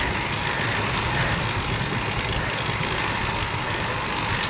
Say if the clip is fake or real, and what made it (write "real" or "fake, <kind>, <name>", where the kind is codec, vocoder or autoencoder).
real